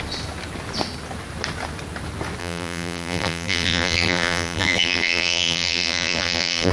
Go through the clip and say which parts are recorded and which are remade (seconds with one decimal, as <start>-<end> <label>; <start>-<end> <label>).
0.0-2.4 recorded; 2.4-6.7 remade